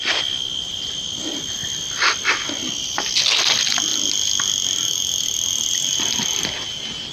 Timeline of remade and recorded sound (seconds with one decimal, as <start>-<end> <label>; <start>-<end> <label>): 0.0-7.1 recorded